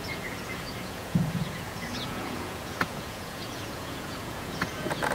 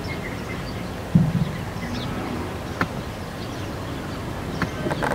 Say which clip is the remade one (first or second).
first